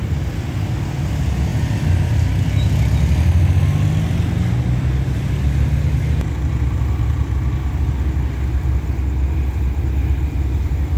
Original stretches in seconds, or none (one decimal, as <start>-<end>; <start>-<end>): 0.0-11.0